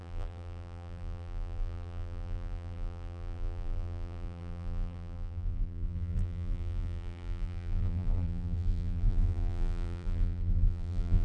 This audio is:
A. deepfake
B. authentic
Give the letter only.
A